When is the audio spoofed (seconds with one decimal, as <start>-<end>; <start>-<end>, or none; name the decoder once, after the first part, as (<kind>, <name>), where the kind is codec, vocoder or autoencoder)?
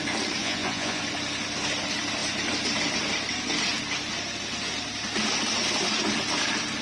0.4-1.0 (vocoder, Vocos)